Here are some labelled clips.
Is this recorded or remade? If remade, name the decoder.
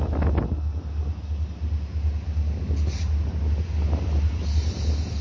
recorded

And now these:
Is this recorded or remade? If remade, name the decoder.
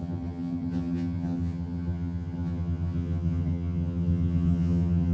remade, vocoder, HiFi-GAN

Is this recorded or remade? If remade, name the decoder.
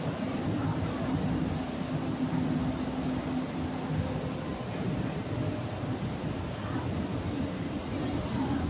recorded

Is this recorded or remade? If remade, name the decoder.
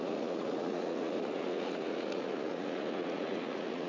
remade, vocoder, Vocos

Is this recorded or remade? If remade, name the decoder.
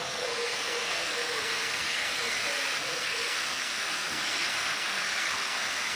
remade, codec, SNAC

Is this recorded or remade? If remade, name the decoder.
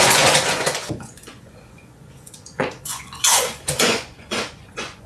remade, vocoder, Vocos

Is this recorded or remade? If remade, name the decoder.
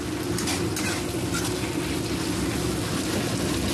recorded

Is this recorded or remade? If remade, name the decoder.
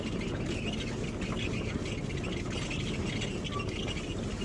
recorded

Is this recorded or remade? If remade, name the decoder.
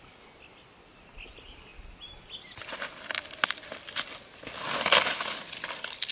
recorded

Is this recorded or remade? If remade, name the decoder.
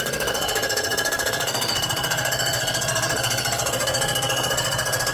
remade, codec, SNAC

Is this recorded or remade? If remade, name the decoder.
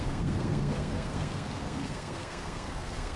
remade, codec, SNAC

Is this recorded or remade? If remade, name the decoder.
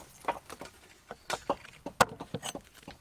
recorded